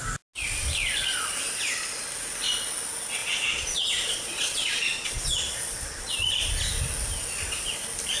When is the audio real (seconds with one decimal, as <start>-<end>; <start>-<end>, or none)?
0.0-3.2; 6.1-8.2